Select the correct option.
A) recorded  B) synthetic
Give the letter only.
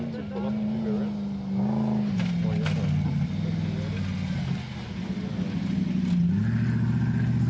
A